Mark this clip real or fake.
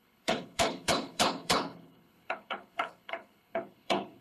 fake